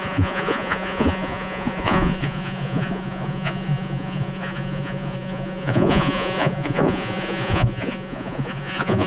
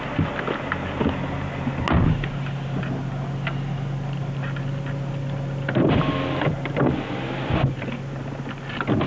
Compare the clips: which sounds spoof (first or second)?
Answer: first